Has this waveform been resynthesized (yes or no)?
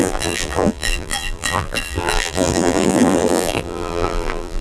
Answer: yes